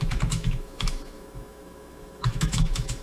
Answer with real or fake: fake